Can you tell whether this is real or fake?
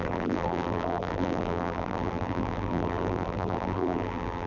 fake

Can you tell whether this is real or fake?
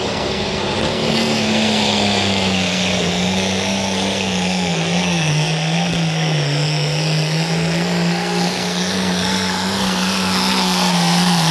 fake